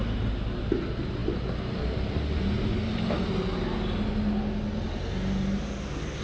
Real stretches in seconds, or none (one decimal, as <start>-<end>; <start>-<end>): 0.0-6.2

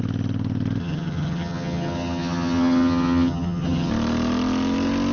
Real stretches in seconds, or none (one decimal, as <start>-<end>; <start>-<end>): 0.0-0.8; 3.9-5.1

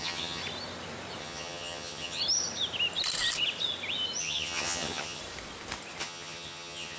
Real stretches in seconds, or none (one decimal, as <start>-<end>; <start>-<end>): 0.4-1.2; 2.2-4.2; 5.2-6.0

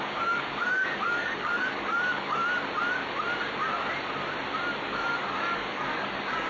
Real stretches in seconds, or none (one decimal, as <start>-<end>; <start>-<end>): 2.4-4.8

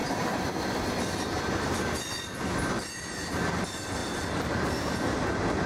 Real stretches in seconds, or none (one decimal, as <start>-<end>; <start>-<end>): 0.6-4.0; 4.9-5.7

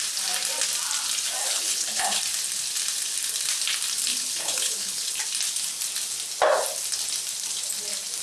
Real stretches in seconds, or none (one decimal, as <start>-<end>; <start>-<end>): 0.0-1.4; 2.2-4.1; 5.1-8.2